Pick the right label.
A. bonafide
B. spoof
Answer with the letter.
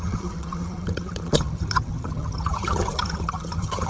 B